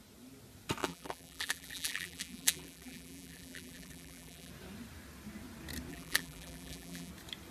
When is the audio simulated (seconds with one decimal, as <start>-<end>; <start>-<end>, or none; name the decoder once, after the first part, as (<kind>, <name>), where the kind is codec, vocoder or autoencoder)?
0.8-4.5 (vocoder, BigVGAN v2); 5.9-7.1